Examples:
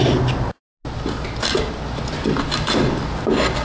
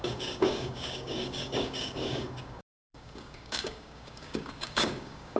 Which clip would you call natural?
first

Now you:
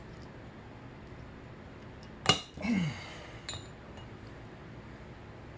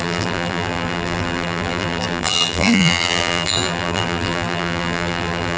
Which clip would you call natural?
first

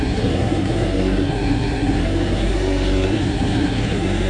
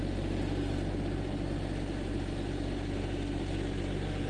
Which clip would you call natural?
second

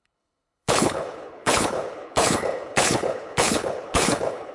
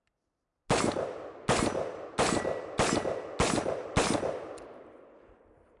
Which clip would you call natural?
second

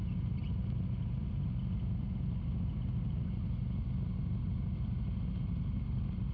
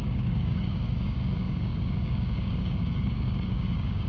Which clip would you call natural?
first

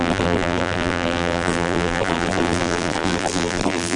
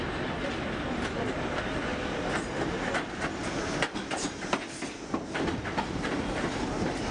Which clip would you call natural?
second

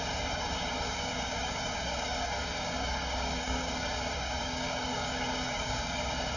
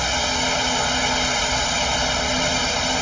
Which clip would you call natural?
second